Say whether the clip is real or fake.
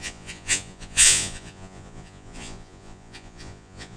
fake